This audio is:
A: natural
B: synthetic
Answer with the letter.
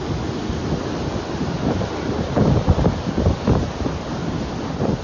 A